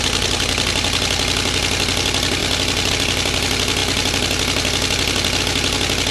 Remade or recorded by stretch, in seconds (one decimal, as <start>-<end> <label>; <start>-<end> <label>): 0.0-6.1 recorded